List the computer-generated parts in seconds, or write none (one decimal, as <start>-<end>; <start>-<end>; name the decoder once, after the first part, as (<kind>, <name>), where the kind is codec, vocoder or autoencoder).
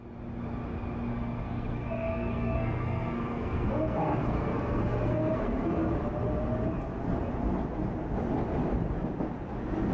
1.1-5.9 (codec, SNAC)